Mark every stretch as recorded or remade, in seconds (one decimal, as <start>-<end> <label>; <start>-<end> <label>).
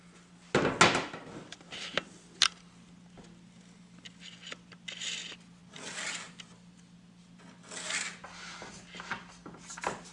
0.0-5.6 recorded; 5.6-6.3 remade; 6.3-10.1 recorded